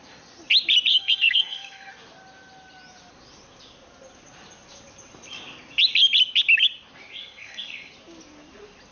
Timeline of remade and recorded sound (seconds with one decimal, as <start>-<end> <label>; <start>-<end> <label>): 0.0-0.9 recorded; 0.9-1.9 remade; 1.9-7.2 recorded; 7.2-7.9 remade; 7.9-8.9 recorded